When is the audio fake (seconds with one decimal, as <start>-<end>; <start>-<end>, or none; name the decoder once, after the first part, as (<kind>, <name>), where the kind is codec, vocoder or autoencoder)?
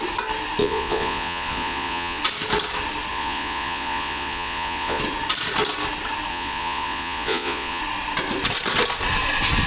0.6-2.2 (vocoder, Vocos); 3.1-5.0; 6.3-7.8